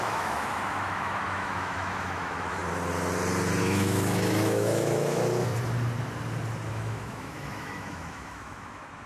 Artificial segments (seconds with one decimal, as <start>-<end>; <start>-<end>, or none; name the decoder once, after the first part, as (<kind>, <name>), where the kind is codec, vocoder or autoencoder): 0.0-2.6 (autoencoder, DAC-VAE); 3.6-5.5; 6.7-9.1